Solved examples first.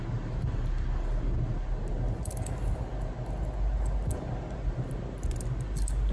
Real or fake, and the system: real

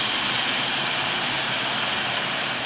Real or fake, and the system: real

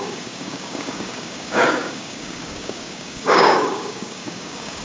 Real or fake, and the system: fake, codec, DAC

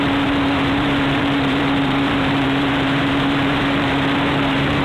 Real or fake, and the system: fake, vocoder, BigVGAN v2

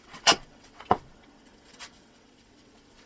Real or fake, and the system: fake, vocoder, WaveNeXt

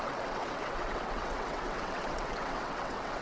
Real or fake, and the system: fake, vocoder, WaveNeXt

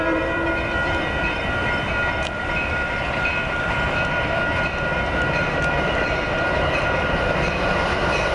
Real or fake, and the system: fake, vocoder, BigVGAN v2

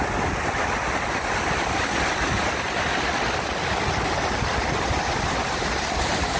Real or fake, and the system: real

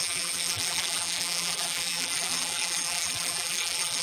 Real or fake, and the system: fake, vocoder, BigVGAN v2